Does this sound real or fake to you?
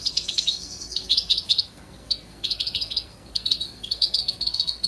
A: fake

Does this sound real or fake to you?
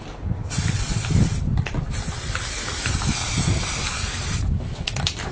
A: real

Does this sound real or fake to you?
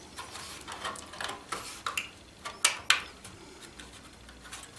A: real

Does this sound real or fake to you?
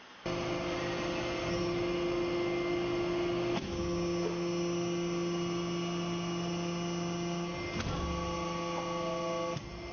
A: real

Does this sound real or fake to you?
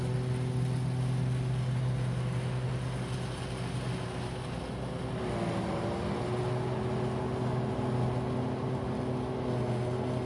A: real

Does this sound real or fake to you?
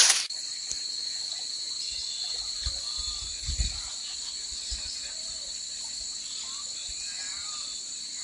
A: real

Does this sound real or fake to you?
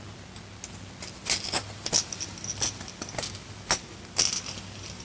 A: real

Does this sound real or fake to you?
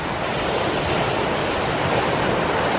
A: real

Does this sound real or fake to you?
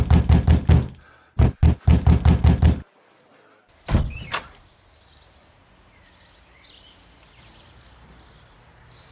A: real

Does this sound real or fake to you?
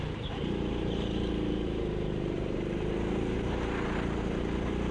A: fake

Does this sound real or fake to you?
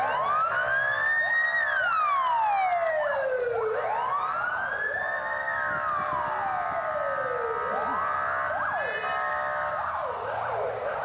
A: real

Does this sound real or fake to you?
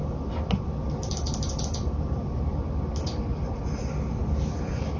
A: real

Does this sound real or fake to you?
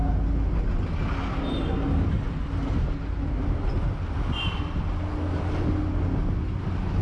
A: real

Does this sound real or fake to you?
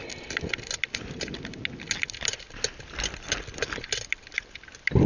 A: real